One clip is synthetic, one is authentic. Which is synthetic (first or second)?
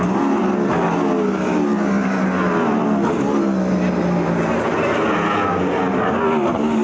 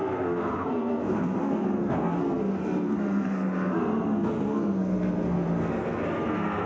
second